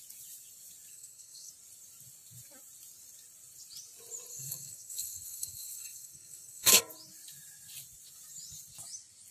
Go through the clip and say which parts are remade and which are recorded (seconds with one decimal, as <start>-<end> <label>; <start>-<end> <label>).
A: 0.0-0.9 recorded; 0.9-1.5 remade; 1.5-4.3 recorded; 4.3-6.8 remade; 6.8-9.3 recorded